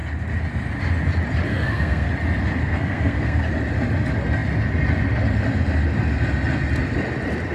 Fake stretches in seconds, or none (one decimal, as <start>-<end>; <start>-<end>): 1.5-2.1; 2.6-3.4